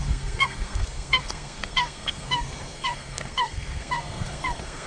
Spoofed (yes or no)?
yes